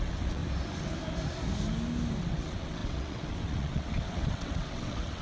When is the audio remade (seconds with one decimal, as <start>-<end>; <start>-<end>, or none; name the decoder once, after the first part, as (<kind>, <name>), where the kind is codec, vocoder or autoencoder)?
0.0-0.4 (vocoder, WaveNeXt); 2.2-5.2